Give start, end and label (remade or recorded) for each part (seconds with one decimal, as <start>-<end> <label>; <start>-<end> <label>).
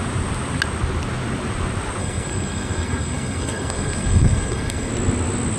0.0-2.0 recorded; 2.0-4.9 remade; 4.9-5.6 recorded